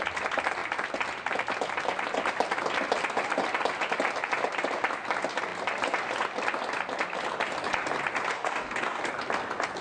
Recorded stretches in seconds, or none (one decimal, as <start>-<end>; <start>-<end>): 0.0-8.3; 9.0-9.8